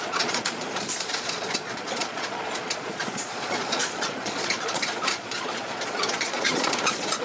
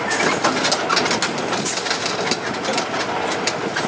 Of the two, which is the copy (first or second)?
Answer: first